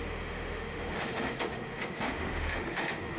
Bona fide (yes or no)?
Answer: no